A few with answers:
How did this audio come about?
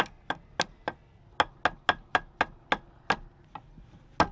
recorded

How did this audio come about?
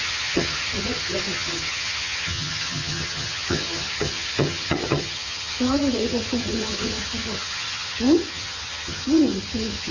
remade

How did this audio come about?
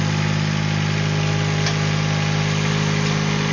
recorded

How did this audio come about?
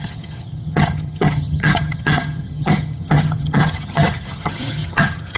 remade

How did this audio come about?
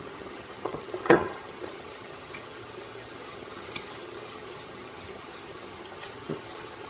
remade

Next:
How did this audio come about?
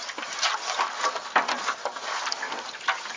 recorded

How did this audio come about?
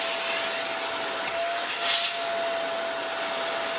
recorded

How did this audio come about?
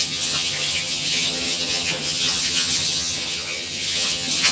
remade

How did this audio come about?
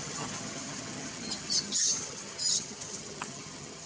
remade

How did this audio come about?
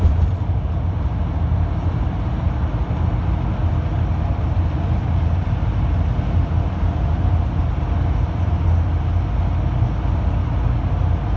recorded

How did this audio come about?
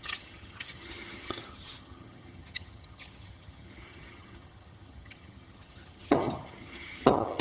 remade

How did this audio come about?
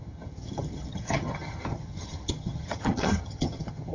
remade